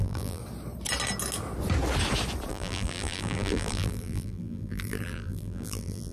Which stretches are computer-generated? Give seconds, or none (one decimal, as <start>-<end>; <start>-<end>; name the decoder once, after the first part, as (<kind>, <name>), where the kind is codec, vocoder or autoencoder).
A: 0.0-0.4 (vocoder, BigVGAN v2); 2.5-6.1